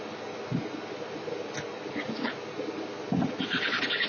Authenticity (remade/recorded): recorded